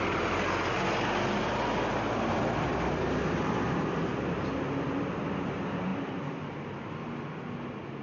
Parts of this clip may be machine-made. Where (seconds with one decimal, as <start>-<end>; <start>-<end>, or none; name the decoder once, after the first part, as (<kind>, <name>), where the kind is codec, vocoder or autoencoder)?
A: none